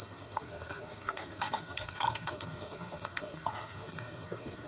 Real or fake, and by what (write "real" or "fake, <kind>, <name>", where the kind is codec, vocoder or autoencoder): fake, codec, SNAC